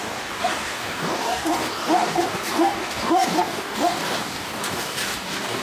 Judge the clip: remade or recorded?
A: remade